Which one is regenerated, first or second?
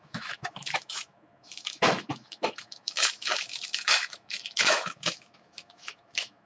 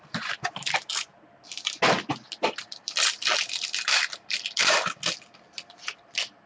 first